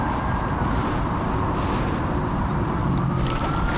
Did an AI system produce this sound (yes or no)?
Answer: no